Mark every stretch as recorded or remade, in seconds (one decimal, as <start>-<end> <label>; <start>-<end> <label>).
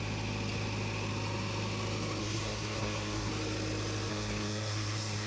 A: 0.0-2.2 recorded; 2.2-3.3 remade; 3.3-4.1 recorded; 4.1-5.3 remade